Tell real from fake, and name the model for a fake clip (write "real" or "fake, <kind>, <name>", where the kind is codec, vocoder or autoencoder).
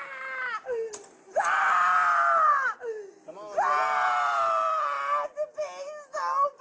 real